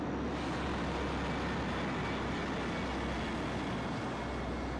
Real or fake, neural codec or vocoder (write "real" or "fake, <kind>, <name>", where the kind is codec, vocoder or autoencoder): real